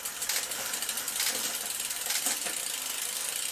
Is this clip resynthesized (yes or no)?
no